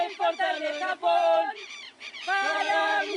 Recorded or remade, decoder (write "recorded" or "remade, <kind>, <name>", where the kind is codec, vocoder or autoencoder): remade, vocoder, Vocos